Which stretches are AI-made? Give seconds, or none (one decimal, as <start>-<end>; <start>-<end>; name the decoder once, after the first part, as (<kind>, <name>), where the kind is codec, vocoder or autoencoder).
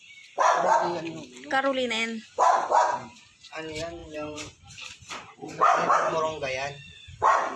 4.0-6.2 (vocoder, BigVGAN v2)